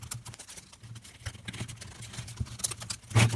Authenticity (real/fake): real